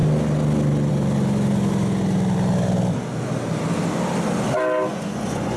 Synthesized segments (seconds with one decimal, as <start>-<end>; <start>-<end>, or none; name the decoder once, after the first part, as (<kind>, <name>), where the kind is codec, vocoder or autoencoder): 4.9-5.6 (vocoder, Vocos)